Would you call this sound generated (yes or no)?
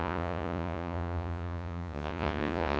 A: yes